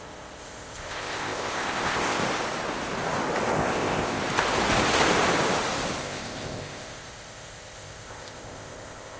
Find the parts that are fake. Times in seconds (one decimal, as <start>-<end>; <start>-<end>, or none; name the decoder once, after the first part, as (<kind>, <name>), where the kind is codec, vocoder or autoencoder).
0.0-2.2 (codec, ZipCodec); 3.5-4.2; 6.0-9.2